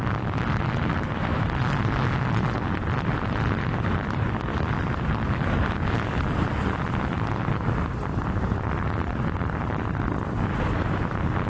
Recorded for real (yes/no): yes